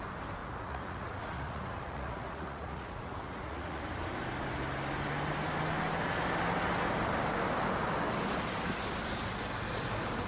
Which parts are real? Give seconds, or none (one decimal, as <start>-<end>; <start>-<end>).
0.0-0.4; 3.8-10.3